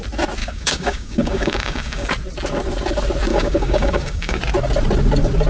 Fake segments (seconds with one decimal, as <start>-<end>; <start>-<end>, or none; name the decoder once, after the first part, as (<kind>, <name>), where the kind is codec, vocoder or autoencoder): 0.4-2.1 (codec, DAC); 3.3-4.4